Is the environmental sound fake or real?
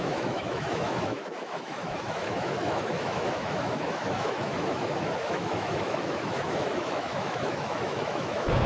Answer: fake